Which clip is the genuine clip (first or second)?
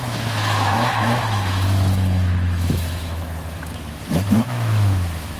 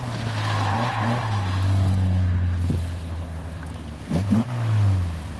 second